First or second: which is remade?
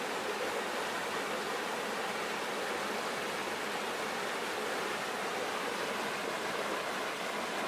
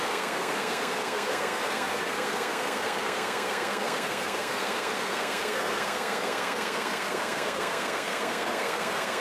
second